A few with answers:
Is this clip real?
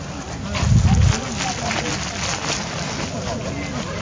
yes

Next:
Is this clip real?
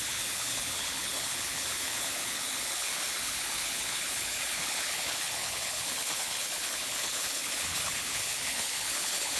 no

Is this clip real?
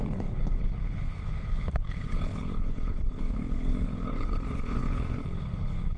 no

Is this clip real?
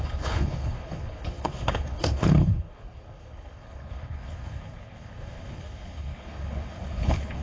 no